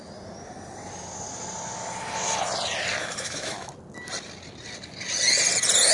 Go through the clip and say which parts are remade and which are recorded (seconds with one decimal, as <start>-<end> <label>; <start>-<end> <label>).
0.0-3.0 recorded; 3.0-3.7 remade; 3.7-5.9 recorded